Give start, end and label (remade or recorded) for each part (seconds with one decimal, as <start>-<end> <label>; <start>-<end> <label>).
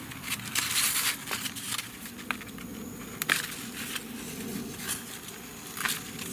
0.0-6.3 recorded